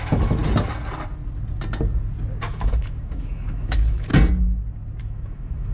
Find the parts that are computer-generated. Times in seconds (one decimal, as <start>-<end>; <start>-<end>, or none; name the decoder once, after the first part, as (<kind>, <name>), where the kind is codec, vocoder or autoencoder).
0.0-0.4 (autoencoder, DAC-VAE); 2.5-4.1; 5.0-5.7